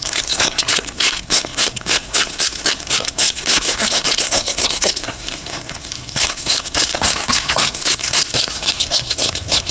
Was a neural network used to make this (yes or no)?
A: yes